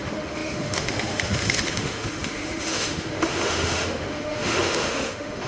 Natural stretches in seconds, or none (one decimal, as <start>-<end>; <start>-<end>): none